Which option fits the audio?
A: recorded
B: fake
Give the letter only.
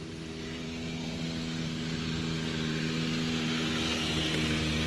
A